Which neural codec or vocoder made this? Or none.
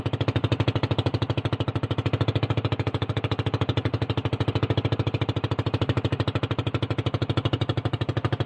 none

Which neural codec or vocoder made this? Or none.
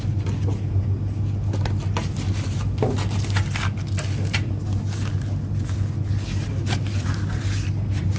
none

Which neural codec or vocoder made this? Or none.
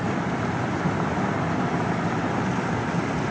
none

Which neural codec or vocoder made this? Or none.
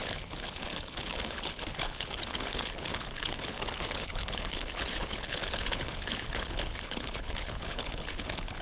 codec, HILCodec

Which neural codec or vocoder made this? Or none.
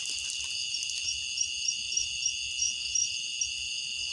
none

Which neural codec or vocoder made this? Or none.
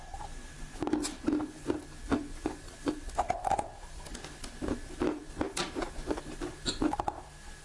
none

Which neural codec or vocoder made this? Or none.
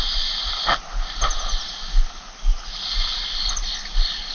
none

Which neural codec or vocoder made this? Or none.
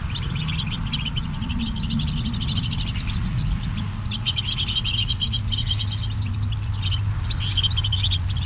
none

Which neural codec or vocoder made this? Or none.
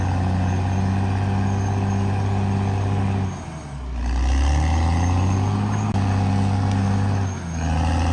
none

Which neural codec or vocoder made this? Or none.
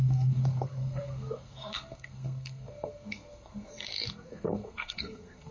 codec, SNAC